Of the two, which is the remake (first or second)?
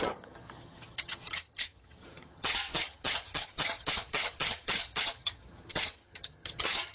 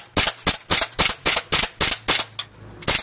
first